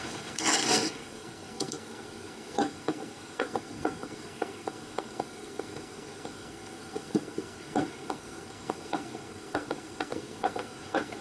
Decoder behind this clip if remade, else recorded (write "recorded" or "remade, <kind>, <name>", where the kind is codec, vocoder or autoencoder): remade, codec, SNAC